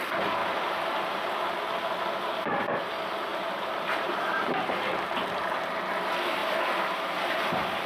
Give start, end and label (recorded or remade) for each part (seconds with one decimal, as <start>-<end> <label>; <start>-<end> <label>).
0.0-0.4 recorded; 0.4-1.2 remade; 1.2-3.3 recorded; 3.3-4.7 remade; 4.7-7.9 recorded